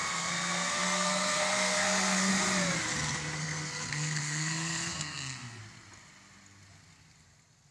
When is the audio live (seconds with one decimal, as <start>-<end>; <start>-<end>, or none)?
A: 2.3-3.4; 5.6-7.7